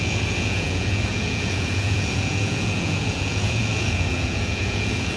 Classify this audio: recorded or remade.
remade